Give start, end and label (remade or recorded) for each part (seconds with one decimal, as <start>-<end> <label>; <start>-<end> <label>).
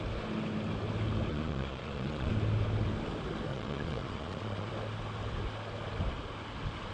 0.0-1.3 recorded; 1.3-2.3 remade; 2.3-3.5 recorded; 3.5-4.7 remade; 4.7-6.9 recorded